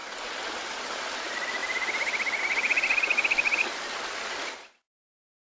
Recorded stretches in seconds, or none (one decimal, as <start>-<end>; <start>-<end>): 0.0-5.6